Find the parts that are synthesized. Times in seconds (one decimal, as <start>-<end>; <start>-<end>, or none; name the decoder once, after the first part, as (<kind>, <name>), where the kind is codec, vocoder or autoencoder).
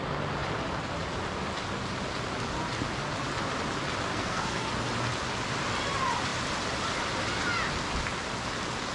4.1-4.7 (codec, SNAC)